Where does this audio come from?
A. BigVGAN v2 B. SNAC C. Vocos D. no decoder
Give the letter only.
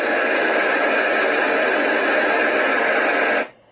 D